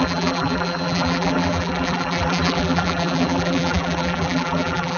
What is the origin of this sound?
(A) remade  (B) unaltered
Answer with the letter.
A